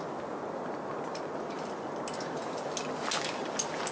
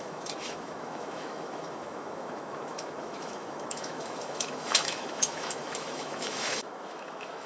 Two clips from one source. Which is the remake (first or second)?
second